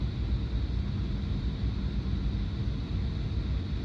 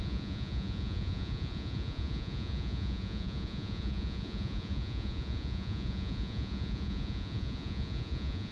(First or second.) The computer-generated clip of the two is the second